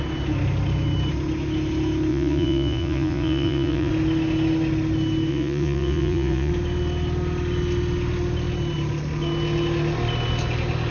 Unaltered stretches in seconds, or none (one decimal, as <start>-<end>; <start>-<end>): 0.0-2.1; 3.9-5.3; 6.5-10.9